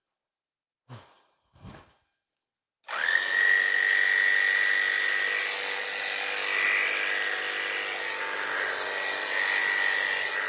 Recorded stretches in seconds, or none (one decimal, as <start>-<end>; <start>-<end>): 0.0-10.5